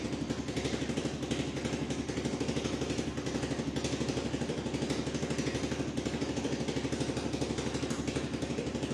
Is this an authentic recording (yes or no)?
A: yes